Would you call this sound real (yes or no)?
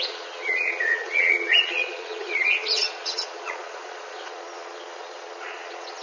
no